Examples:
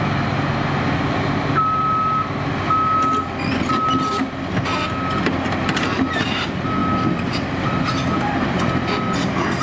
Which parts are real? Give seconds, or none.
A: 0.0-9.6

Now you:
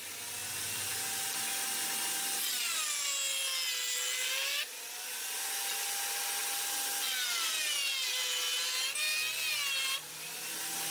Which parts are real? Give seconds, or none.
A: 0.0-10.9

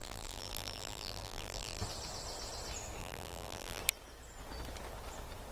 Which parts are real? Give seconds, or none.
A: 1.8-3.0; 3.8-5.5